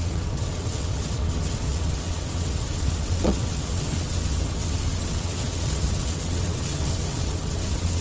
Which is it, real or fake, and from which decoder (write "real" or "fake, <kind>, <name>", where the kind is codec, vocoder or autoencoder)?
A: fake, vocoder, WaveNeXt